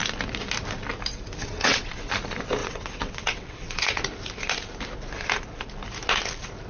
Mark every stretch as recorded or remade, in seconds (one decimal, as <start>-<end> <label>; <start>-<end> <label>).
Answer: 0.0-1.4 recorded; 1.4-2.1 remade; 2.1-2.6 recorded; 2.6-4.0 remade; 4.0-6.7 recorded